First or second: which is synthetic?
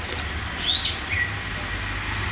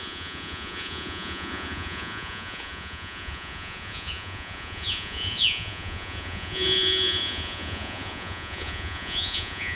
second